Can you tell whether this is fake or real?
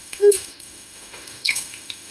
fake